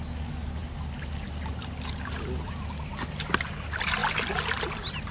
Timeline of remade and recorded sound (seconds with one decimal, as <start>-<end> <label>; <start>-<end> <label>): 0.0-5.1 recorded